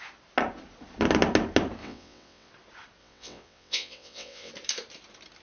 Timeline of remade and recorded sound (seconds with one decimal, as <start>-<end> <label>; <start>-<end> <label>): 0.0-1.8 recorded; 1.8-2.5 remade; 2.5-3.0 recorded; 3.0-4.5 remade; 4.5-5.4 recorded